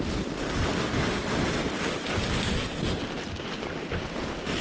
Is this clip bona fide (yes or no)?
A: yes